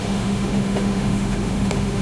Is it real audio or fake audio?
fake